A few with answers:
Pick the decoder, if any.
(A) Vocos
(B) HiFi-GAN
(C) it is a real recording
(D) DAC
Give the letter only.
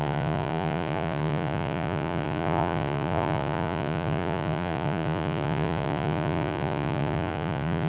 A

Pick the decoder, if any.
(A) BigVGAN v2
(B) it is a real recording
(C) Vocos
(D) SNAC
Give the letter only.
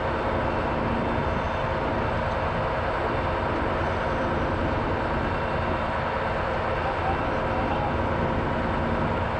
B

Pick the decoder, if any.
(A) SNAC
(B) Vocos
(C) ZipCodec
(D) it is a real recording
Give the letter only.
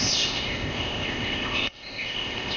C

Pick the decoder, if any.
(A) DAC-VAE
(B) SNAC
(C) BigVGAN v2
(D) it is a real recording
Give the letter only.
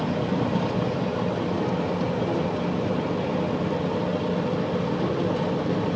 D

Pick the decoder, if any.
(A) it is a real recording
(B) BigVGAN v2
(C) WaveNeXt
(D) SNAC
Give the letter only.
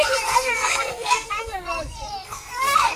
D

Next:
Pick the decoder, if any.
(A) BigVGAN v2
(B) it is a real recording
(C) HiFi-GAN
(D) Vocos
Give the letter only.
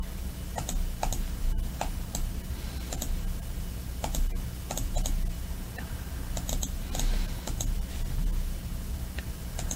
B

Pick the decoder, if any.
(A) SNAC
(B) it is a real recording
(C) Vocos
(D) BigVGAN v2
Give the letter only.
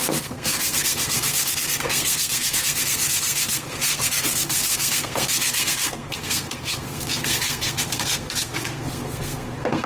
A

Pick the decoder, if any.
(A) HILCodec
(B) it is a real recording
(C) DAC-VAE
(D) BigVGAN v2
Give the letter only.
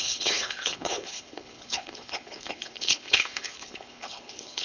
A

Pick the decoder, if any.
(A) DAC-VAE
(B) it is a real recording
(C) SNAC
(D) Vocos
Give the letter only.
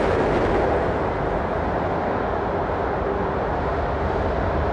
B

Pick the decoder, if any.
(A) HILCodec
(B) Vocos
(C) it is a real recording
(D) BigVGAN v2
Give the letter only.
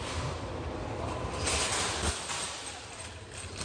C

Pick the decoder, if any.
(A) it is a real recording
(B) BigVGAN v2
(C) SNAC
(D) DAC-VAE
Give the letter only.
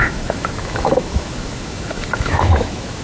D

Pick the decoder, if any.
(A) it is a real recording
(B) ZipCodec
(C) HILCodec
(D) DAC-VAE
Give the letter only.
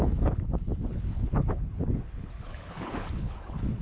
C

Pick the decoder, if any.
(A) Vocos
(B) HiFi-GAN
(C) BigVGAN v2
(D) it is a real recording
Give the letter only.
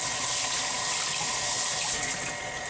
D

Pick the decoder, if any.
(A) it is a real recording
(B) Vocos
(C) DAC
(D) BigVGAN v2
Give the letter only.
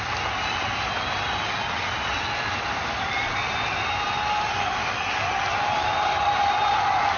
A